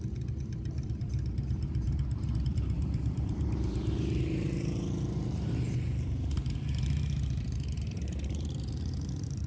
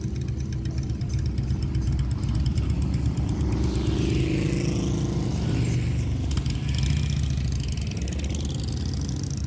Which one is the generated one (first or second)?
first